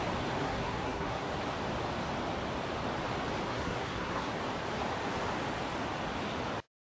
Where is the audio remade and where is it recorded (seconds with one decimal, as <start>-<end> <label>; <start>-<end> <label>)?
0.0-0.4 recorded; 0.4-1.3 remade; 1.3-3.5 recorded; 3.5-4.3 remade; 4.3-6.9 recorded